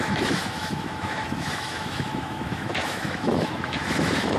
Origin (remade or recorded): remade